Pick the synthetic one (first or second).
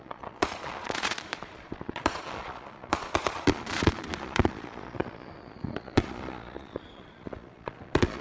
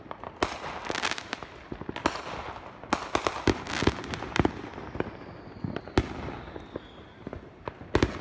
first